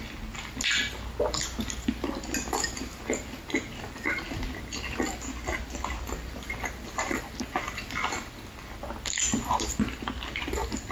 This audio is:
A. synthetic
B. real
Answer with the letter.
B